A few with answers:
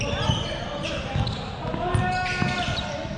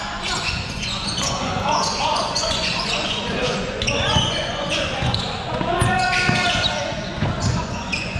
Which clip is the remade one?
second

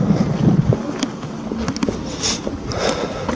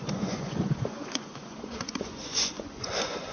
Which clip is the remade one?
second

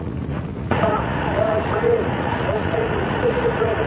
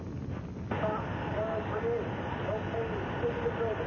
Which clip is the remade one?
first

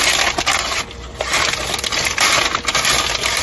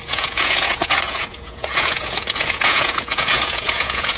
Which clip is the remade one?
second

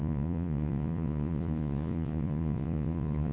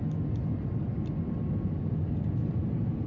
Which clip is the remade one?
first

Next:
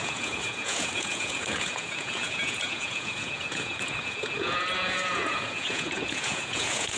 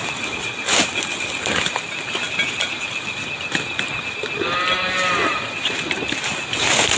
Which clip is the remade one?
first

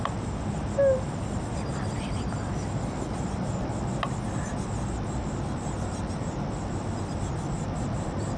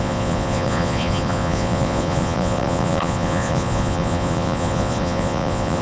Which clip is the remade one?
second